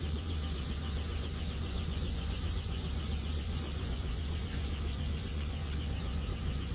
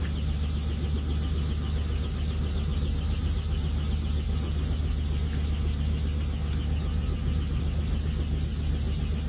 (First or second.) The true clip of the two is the second